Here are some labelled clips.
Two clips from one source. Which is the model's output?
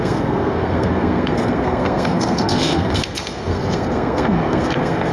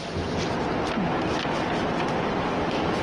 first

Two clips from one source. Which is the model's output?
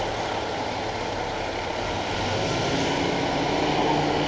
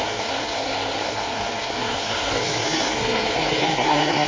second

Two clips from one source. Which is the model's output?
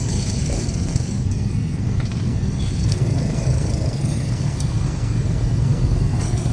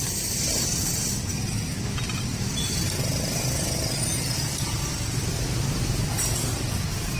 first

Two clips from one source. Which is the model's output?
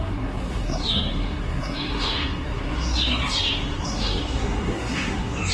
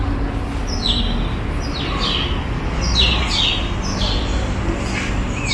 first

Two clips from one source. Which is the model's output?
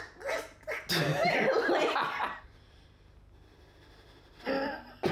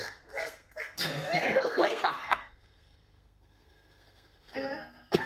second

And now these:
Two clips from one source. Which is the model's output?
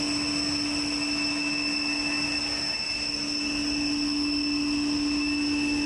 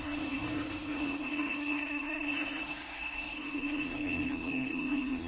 second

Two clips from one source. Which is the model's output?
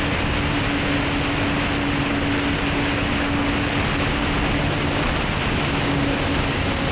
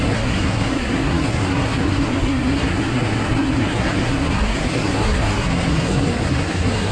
second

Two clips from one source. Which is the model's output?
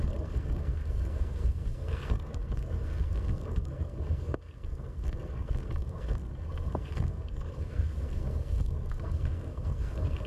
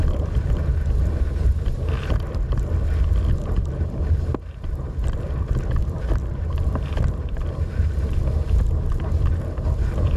first